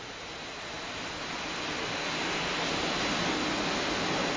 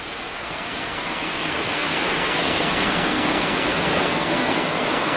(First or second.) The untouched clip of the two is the first